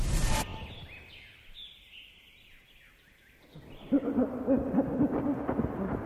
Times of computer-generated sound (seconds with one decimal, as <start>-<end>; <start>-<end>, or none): none